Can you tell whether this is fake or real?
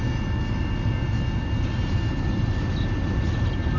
real